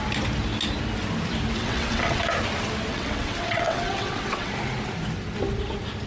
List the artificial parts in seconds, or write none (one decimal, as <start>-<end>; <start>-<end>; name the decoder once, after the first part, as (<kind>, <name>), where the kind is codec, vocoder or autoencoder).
1.6-2.2 (vocoder, WaveNeXt); 2.9-4.5